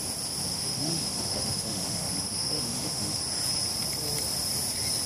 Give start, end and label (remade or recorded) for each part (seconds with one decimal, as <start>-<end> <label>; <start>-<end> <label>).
0.0-0.5 recorded; 0.5-3.2 remade; 3.2-5.1 recorded